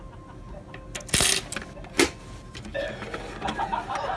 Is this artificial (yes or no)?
no